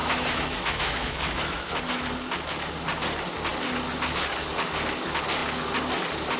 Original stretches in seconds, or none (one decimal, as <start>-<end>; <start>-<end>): 1.7-6.4